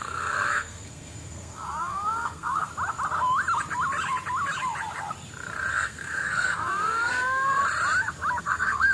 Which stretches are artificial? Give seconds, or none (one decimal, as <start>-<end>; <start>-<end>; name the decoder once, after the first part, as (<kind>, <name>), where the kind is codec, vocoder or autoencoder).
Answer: 0.0-2.7 (codec, SNAC); 5.7-7.6; 8.4-8.9